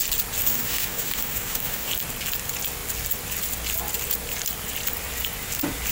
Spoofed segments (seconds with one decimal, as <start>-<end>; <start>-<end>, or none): 0.4-1.9